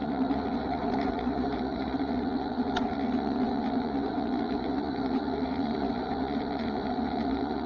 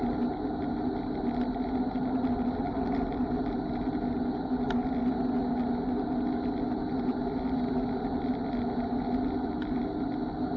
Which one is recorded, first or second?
second